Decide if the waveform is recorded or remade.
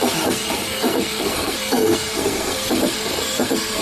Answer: remade